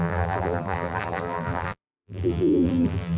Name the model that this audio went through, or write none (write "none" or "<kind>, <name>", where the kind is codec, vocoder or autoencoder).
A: vocoder, BigVGAN v2